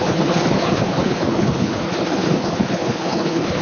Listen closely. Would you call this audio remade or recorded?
remade